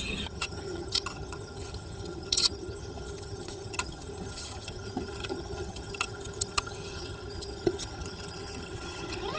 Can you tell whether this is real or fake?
fake